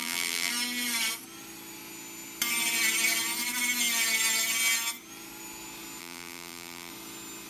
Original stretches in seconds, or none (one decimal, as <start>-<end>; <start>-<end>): 0.5-6.0; 6.9-7.5

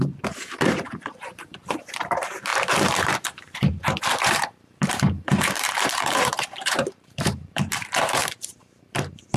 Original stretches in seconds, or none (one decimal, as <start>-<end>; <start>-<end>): none

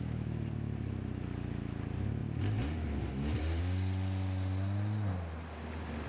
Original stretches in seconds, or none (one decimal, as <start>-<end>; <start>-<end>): 0.0-2.2; 3.6-6.1

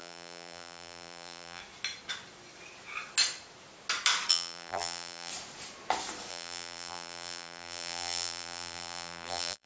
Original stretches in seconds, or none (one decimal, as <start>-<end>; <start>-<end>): 1.6-4.3; 5.3-6.3

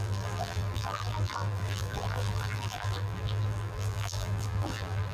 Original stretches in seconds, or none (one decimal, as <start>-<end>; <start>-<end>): none

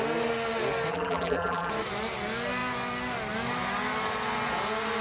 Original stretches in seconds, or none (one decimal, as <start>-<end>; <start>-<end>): 0.0-0.9; 1.7-5.0